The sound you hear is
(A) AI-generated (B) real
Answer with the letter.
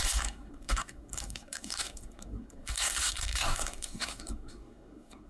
A